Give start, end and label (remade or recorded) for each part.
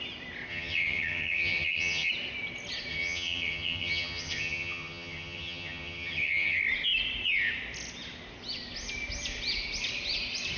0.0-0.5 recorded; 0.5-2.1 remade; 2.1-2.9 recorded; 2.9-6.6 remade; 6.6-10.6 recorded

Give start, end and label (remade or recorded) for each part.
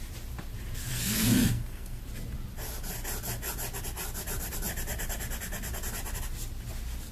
0.0-0.9 recorded; 0.9-2.0 remade; 2.0-7.1 recorded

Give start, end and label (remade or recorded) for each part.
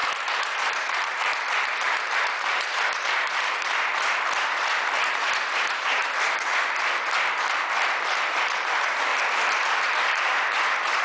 0.0-6.0 remade; 6.0-8.3 recorded; 8.3-9.1 remade; 9.1-9.8 recorded; 9.8-11.0 remade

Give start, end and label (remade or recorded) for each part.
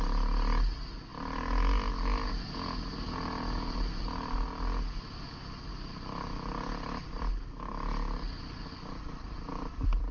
0.0-1.1 remade; 1.1-5.7 recorded; 5.7-10.1 remade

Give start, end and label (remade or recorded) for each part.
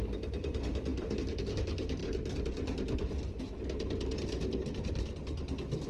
0.0-5.9 recorded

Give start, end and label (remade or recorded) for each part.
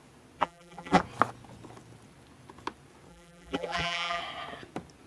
0.0-0.4 recorded; 0.4-1.0 remade; 1.0-3.1 recorded; 3.1-4.2 remade; 4.2-5.1 recorded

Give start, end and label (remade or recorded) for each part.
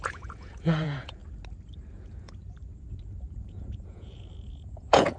0.0-1.2 remade; 1.2-1.9 recorded; 1.9-2.4 remade; 2.4-3.4 recorded; 3.4-5.2 remade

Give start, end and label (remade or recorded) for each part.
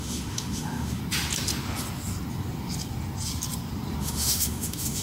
0.0-1.0 remade; 1.0-4.0 recorded; 4.0-5.0 remade